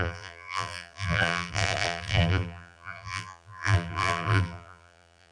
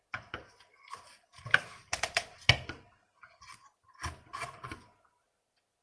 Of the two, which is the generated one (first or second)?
first